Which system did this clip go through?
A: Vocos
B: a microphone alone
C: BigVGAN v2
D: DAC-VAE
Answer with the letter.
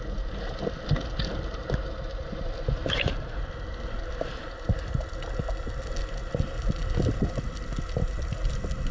B